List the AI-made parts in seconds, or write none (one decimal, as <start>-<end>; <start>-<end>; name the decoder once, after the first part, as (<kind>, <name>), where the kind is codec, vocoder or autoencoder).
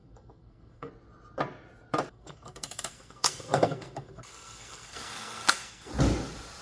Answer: 0.0-0.9 (codec, SNAC); 2.1-5.9